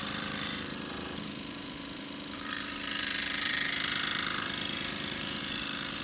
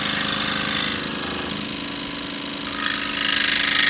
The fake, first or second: first